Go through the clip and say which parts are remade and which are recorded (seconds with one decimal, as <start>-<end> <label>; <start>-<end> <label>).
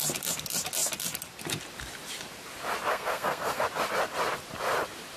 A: 0.0-2.9 recorded; 2.9-3.6 remade; 3.6-5.2 recorded